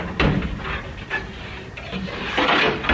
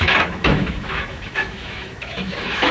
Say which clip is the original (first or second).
first